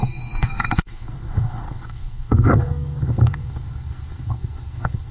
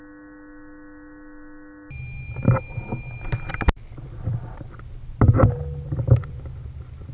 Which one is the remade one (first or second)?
first